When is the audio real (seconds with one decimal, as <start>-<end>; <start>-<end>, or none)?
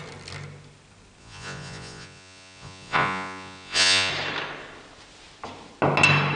0.0-1.2; 4.1-6.4